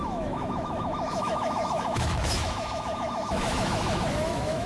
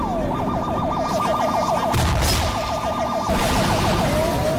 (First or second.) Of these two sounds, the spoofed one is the first